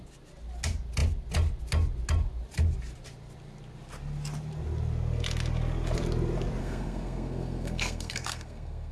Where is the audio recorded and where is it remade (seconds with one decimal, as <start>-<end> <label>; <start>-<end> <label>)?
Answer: 0.0-6.6 recorded; 6.6-8.9 remade